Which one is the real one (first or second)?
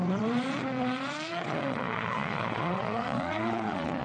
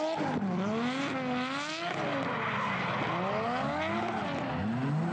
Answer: second